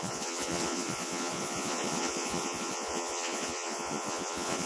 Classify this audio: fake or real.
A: fake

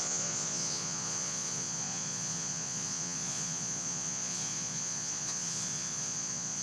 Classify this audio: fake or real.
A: fake